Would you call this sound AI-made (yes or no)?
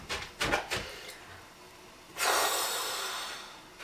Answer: no